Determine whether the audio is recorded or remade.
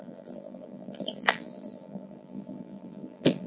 remade